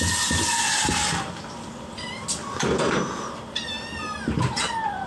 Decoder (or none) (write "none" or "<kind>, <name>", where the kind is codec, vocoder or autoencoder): none